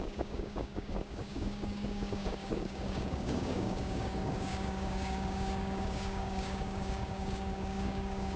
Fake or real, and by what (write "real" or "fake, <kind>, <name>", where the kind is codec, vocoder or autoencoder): fake, codec, DAC